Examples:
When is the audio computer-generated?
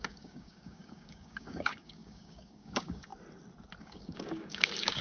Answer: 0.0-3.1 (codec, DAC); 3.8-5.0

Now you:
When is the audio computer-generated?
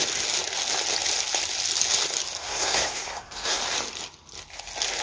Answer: 2.4-3.6 (codec, SNAC)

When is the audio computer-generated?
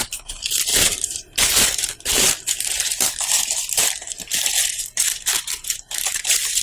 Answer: 0.0-4.1 (vocoder, BigVGAN v2); 4.7-6.6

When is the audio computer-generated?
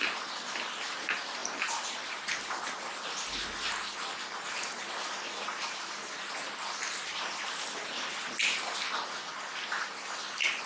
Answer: none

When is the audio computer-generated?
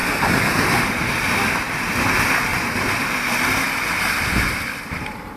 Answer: 0.0-2.5 (vocoder, BigVGAN v2); 4.2-5.4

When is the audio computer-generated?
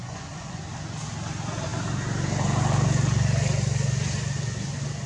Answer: 0.0-0.6 (vocoder, Vocos)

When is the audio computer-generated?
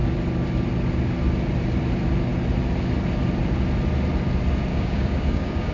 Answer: 4.7-5.7 (codec, DAC)